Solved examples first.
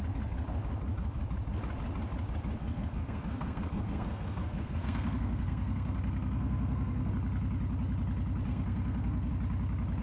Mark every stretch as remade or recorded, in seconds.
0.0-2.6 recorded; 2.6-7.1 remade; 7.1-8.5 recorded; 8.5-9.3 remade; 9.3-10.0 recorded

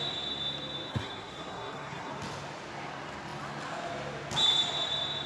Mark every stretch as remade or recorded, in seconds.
0.0-0.9 recorded; 0.9-2.1 remade; 2.1-5.3 recorded

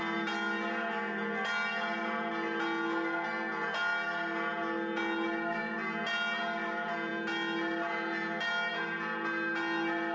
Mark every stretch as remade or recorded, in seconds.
0.0-10.1 recorded

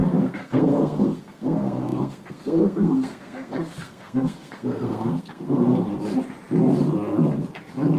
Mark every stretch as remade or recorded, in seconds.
0.0-5.7 remade; 5.7-8.0 recorded

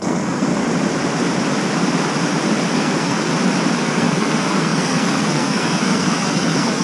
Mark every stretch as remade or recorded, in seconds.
0.0-0.5 remade; 0.5-2.7 recorded; 2.7-3.3 remade; 3.3-3.8 recorded; 3.8-6.8 remade

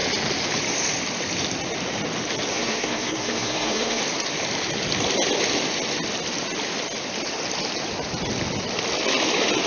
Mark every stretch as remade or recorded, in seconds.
0.0-2.5 recorded; 2.5-4.0 remade; 4.0-9.7 recorded

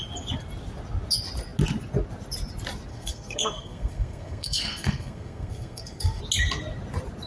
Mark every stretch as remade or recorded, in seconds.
0.0-2.9 recorded; 2.9-6.2 remade; 6.2-7.3 recorded